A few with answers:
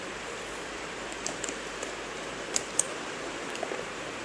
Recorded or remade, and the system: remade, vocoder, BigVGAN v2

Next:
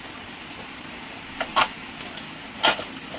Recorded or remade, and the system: recorded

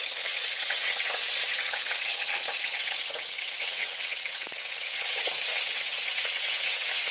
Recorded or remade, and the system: remade, vocoder, WaveNeXt